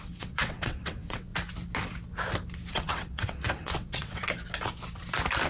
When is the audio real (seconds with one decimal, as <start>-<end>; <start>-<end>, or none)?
1.3-2.7; 4.2-5.5